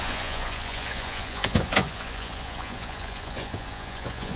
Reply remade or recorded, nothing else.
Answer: remade